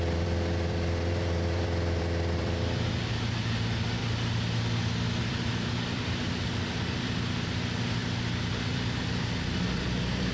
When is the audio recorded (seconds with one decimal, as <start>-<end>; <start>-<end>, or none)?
4.0-5.2; 8.0-8.6

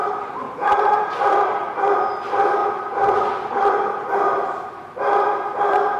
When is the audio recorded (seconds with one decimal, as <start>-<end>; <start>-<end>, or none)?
2.0-6.0